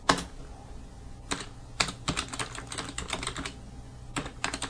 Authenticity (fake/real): real